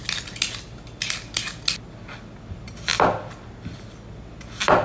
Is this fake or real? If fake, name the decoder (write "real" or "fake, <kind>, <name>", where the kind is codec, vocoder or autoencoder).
real